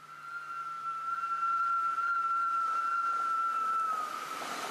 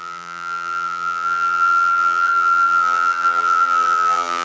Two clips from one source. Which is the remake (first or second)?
second